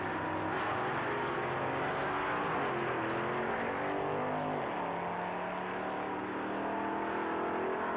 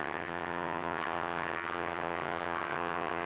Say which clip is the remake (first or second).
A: second